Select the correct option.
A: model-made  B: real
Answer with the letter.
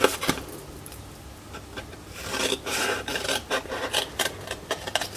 B